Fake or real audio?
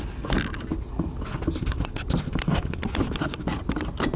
real